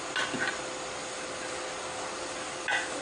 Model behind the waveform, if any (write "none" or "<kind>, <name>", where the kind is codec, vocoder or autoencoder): none